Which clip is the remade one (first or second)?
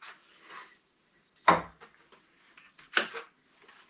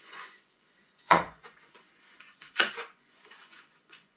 second